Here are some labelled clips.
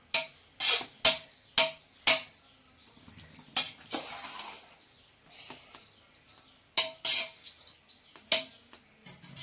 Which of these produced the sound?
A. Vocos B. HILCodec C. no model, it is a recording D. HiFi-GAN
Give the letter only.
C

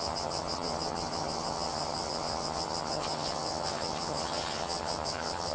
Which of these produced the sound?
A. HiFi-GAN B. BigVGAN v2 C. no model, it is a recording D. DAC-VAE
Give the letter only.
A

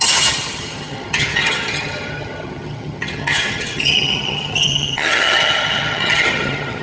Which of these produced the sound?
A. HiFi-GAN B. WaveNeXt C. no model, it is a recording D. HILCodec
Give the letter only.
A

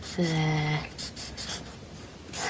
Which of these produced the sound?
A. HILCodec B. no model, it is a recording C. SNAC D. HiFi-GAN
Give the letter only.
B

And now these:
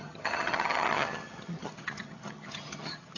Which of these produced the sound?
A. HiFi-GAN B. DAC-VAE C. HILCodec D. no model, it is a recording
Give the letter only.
A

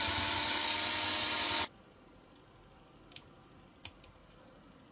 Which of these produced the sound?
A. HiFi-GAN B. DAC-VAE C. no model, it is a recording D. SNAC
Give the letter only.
C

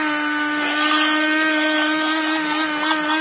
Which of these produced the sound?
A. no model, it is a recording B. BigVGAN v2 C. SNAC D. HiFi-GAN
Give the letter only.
A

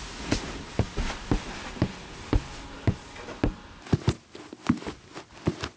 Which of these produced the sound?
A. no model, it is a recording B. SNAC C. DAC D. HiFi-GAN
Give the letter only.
A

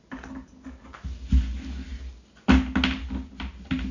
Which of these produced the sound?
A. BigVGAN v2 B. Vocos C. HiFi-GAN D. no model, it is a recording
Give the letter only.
D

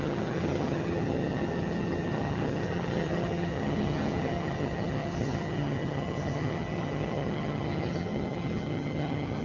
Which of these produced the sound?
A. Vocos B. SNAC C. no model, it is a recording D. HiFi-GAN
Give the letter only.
D